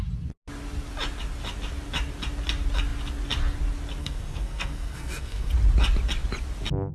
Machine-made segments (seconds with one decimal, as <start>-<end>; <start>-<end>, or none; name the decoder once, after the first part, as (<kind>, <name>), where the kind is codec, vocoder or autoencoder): 4.0-5.5 (codec, SNAC)